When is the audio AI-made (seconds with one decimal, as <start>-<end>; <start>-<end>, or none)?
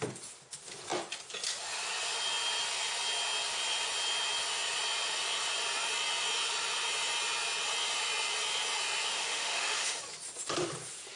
9.1-10.0